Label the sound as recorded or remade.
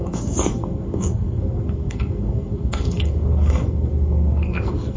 remade